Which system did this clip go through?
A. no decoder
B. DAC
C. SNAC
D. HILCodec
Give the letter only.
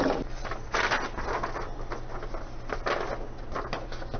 A